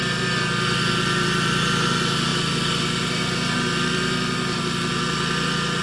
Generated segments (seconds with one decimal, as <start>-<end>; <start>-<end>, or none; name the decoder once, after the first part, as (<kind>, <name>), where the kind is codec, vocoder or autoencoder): none